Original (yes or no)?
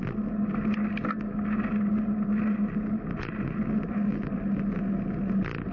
yes